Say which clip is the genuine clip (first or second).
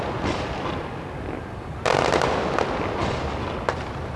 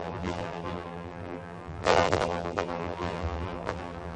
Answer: first